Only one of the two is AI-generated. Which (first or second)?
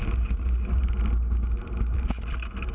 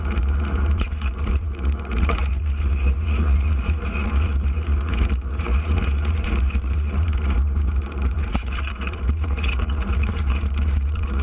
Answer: second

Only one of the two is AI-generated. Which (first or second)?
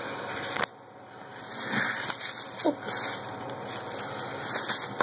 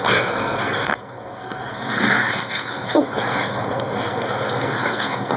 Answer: second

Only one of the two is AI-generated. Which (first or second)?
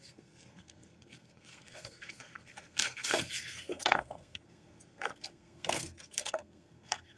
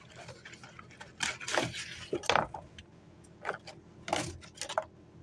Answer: first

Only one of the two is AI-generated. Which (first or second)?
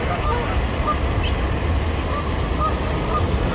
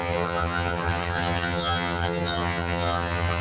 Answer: second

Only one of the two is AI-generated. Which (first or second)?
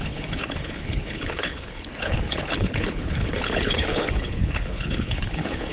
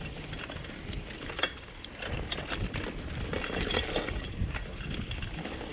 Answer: first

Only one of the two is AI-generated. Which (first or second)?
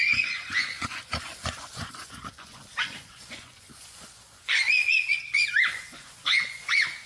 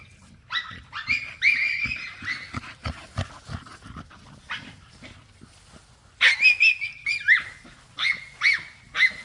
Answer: first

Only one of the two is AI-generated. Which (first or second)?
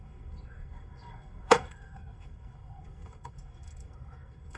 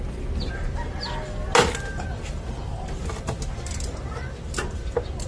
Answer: first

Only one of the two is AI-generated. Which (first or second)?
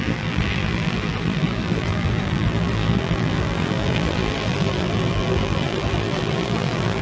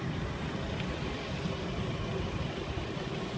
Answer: first